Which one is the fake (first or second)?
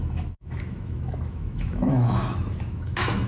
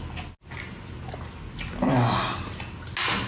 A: first